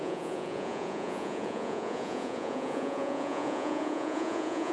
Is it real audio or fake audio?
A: fake